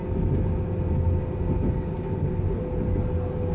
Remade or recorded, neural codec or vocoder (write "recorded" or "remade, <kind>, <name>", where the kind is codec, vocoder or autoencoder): recorded